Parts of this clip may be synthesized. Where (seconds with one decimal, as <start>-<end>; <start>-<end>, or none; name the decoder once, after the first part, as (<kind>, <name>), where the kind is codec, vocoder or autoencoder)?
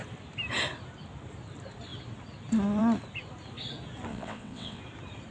4.1-4.8 (vocoder, WaveNeXt)